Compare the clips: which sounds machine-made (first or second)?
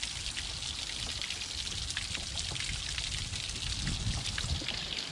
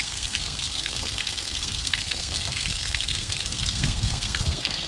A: second